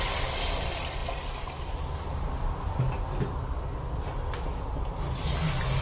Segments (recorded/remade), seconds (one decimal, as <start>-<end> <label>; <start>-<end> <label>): 0.0-5.8 recorded

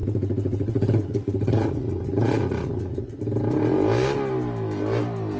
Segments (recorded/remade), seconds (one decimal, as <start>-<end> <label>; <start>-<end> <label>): 0.0-3.2 remade; 3.2-5.4 recorded

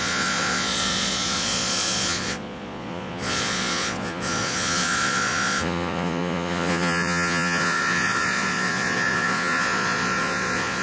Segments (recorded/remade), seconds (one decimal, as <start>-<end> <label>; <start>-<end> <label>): 0.0-10.8 remade